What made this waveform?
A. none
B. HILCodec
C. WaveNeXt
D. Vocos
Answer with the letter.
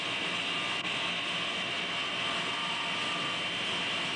A